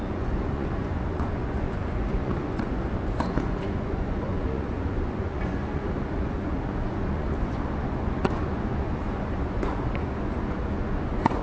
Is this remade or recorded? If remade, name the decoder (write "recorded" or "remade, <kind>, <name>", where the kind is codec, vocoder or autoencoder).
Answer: remade, vocoder, Vocos